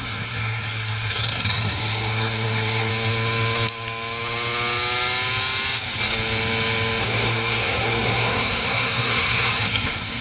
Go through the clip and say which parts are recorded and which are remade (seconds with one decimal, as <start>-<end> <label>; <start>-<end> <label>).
0.0-2.9 remade; 2.9-7.0 recorded; 7.0-10.2 remade